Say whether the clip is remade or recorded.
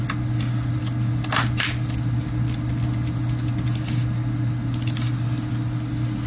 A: recorded